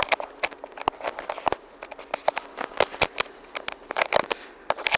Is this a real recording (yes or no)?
yes